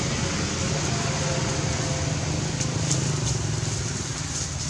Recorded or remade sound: recorded